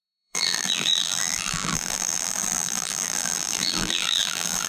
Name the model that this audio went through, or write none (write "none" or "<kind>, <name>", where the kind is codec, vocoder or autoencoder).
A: vocoder, BigVGAN v2